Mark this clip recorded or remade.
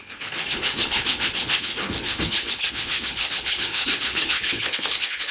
remade